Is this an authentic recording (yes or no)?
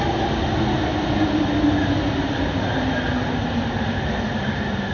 yes